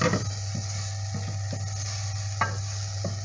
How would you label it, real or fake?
real